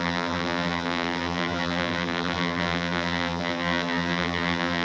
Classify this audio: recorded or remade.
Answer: remade